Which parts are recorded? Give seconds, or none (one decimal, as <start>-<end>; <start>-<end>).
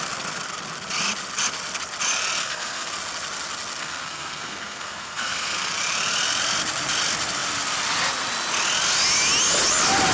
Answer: 0.0-2.4; 2.9-3.8; 5.7-10.1